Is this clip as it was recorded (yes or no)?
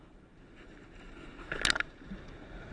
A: yes